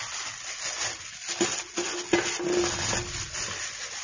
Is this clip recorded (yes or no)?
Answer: yes